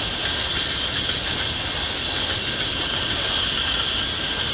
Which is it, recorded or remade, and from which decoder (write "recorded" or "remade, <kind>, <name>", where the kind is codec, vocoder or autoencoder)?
recorded